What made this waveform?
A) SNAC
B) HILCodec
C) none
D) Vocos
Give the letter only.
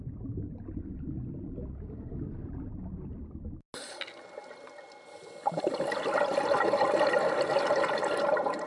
C